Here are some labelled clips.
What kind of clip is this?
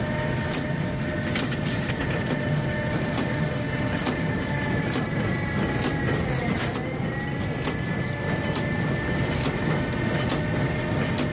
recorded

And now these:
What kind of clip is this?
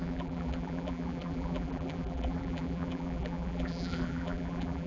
remade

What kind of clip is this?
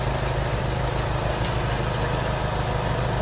recorded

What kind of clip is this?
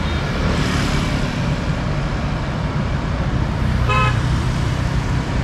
remade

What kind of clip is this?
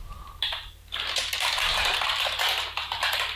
remade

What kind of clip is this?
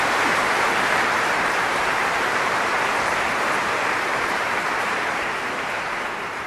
remade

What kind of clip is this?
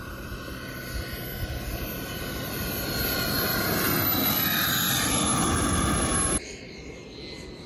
recorded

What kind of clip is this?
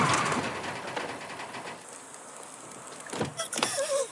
remade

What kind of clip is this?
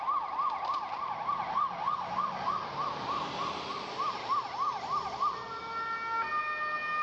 recorded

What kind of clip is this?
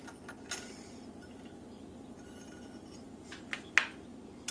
recorded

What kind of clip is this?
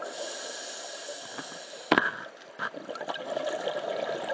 recorded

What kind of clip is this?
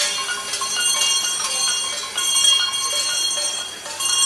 recorded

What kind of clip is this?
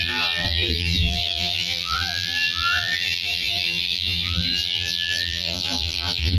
remade